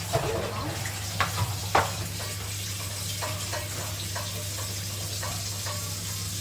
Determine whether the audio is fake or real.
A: real